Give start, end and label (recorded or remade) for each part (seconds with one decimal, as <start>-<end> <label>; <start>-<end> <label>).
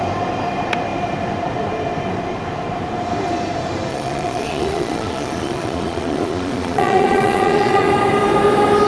0.0-3.9 recorded; 3.9-7.9 remade; 7.9-8.9 recorded